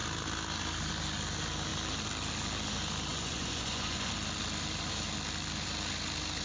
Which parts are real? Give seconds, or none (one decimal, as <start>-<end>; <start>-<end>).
0.0-3.1; 4.1-6.4